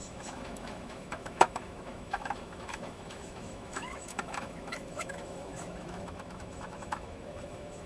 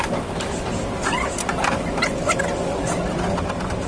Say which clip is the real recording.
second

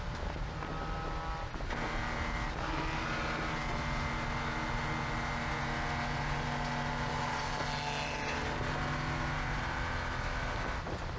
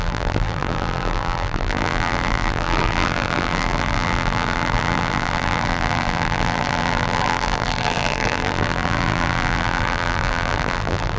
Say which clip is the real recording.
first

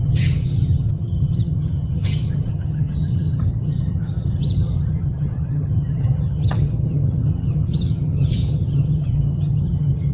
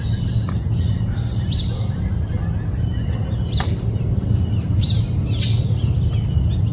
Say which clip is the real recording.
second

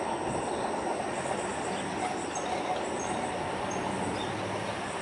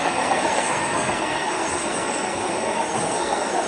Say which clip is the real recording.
first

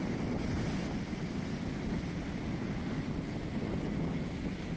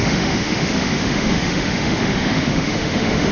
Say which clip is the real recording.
first